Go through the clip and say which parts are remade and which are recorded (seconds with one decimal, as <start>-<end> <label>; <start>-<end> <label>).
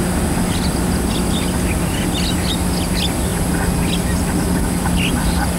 0.0-5.6 recorded